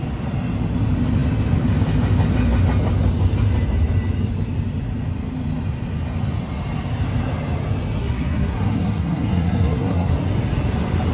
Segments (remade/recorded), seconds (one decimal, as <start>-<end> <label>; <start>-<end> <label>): 0.0-8.0 recorded; 8.0-10.1 remade; 10.1-11.1 recorded